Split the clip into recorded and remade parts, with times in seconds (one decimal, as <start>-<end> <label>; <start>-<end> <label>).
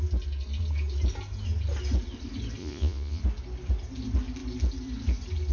0.0-2.6 recorded; 2.6-3.2 remade; 3.2-5.5 recorded